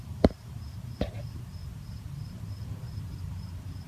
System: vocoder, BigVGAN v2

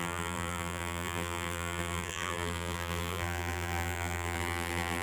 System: vocoder, BigVGAN v2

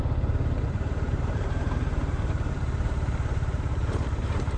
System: vocoder, BigVGAN v2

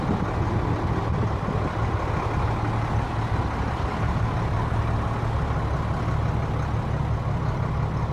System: none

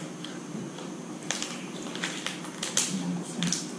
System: none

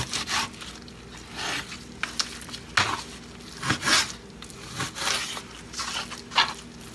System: none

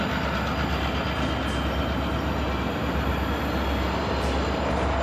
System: none